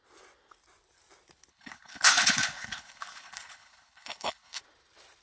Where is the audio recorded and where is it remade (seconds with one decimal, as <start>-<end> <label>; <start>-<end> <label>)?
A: 0.0-1.5 recorded; 1.5-4.6 remade; 4.6-5.2 recorded

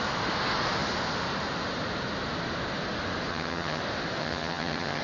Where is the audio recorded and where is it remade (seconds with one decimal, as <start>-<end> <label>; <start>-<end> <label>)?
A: 0.0-3.3 recorded; 3.3-3.8 remade; 3.8-4.2 recorded; 4.2-5.0 remade

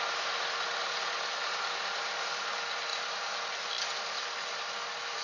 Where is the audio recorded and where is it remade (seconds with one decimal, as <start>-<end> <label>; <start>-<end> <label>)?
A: 0.0-5.2 recorded

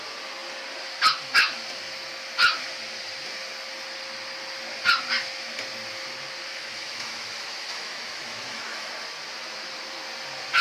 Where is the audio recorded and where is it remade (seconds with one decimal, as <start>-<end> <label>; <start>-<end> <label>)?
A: 0.0-6.5 recorded; 6.5-8.9 remade; 8.9-10.6 recorded